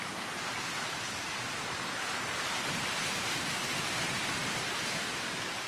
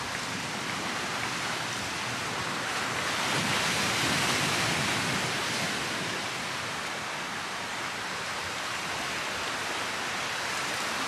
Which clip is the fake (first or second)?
first